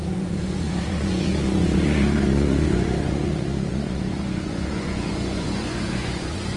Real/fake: fake